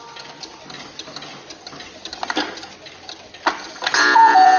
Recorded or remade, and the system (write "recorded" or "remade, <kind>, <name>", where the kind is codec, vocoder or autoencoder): recorded